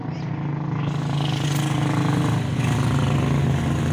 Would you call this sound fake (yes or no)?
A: no